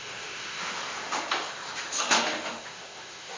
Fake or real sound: fake